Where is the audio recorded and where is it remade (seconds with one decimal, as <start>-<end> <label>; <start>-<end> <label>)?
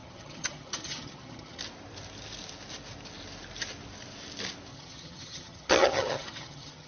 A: 0.0-1.6 remade; 1.6-4.7 recorded; 4.7-6.9 remade